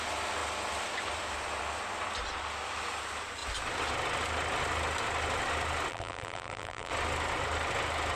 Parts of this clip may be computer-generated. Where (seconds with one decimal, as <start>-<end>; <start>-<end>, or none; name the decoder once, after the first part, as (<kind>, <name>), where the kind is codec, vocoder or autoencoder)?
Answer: 5.9-6.9 (vocoder, BigVGAN v2)